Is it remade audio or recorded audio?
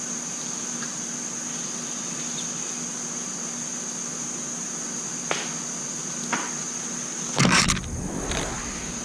recorded